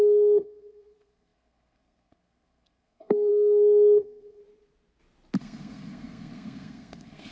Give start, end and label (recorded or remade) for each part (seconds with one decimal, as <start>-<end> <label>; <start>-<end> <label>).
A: 0.0-4.4 remade; 4.4-5.4 recorded; 5.4-7.3 remade